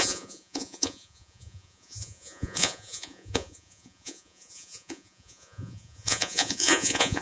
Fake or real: fake